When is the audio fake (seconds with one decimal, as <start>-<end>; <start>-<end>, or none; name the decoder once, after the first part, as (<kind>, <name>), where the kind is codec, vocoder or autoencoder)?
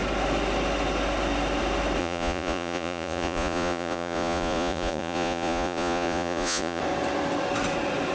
2.0-6.8 (vocoder, Vocos)